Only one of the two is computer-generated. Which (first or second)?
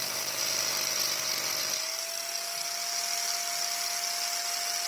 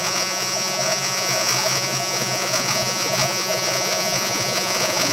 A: second